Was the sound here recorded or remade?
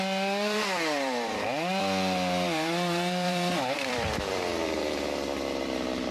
remade